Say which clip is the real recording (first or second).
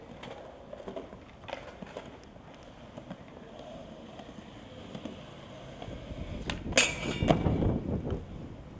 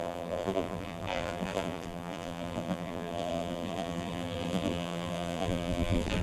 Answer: first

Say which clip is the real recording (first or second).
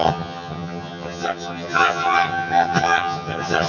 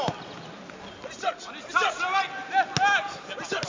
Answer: second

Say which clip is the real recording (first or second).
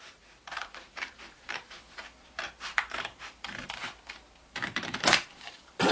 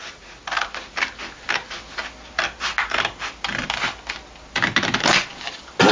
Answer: second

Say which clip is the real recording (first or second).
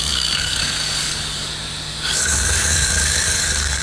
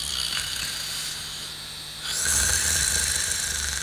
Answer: second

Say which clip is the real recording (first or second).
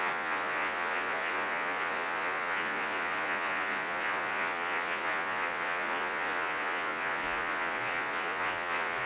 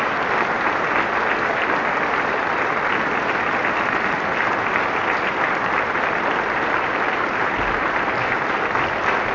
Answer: second